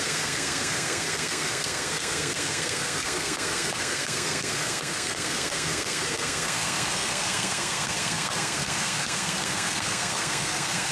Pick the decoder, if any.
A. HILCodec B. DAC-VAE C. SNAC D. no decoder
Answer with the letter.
C